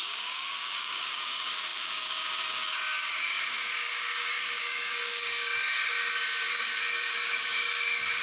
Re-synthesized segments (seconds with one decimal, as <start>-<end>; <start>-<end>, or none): 0.0-8.2